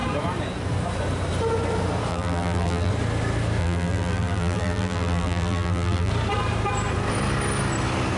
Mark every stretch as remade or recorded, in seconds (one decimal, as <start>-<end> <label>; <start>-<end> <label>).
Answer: 0.0-2.1 recorded; 2.1-2.9 remade; 2.9-3.6 recorded; 3.6-6.1 remade; 6.1-8.2 recorded